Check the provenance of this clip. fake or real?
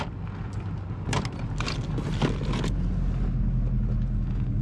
real